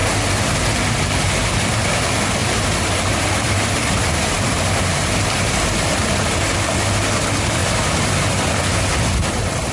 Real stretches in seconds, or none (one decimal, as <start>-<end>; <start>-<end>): 0.0-2.4; 5.8-9.7